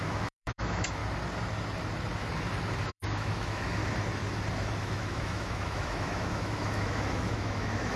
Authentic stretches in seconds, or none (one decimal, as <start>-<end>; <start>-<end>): 1.0-2.8; 3.8-4.8